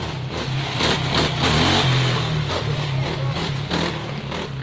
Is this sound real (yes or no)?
yes